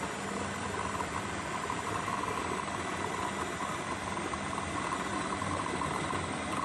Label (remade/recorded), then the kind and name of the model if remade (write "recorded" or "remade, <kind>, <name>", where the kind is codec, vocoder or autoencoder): recorded